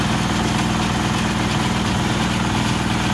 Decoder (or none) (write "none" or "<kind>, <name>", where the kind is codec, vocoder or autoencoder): none